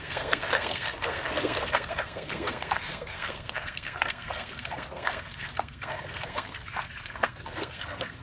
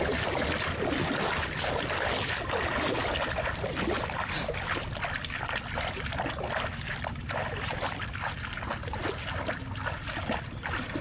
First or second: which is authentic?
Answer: second